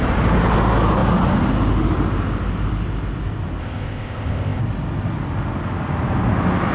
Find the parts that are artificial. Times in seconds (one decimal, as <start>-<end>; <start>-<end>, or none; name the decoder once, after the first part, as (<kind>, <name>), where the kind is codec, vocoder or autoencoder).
3.6-4.6 (codec, ZipCodec)